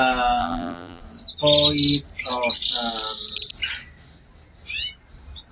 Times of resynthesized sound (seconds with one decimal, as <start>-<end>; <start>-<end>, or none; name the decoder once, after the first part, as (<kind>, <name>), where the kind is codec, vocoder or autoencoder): 0.4-1.0 (vocoder, BigVGAN v2)